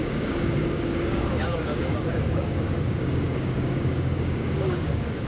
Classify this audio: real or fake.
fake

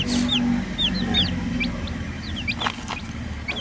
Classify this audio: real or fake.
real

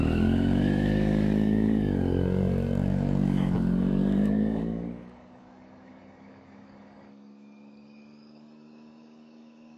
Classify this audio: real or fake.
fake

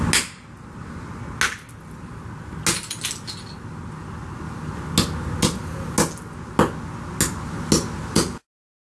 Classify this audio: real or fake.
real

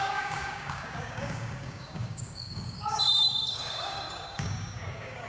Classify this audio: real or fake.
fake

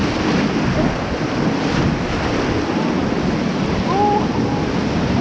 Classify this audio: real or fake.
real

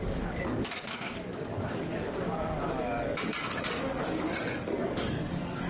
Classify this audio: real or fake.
fake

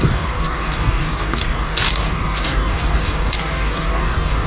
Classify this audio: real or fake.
fake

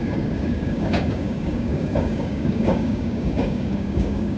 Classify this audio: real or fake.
fake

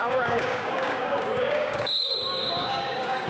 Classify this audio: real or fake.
fake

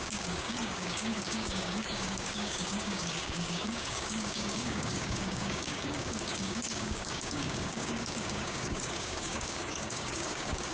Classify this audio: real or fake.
fake